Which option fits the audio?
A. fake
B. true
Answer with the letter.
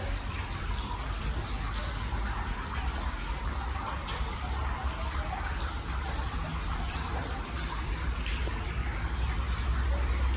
B